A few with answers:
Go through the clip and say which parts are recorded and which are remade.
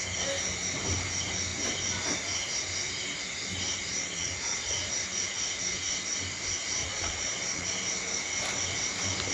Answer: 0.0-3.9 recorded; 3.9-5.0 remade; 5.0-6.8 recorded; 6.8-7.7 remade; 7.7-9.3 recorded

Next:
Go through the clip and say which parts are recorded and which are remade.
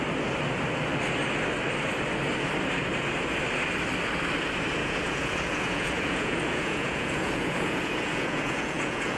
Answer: 0.0-4.8 recorded; 4.8-9.2 remade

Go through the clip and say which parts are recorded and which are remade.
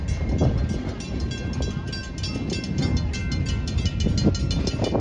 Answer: 0.0-5.0 recorded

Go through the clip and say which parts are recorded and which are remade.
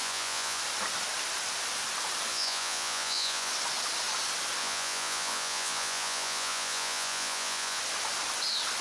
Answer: 0.0-0.6 remade; 0.6-2.3 recorded; 2.3-3.5 remade; 3.5-4.6 recorded; 4.6-7.8 remade; 7.8-8.8 recorded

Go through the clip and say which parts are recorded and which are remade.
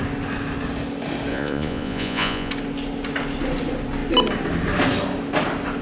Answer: 0.0-1.3 recorded; 1.3-2.5 remade; 2.5-5.8 recorded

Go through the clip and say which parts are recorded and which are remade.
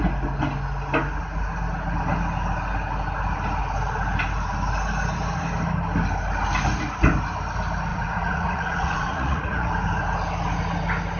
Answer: 0.0-7.9 recorded; 7.9-9.7 remade; 9.7-11.2 recorded